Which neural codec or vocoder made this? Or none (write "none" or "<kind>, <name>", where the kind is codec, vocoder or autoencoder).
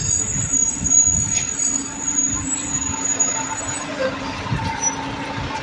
none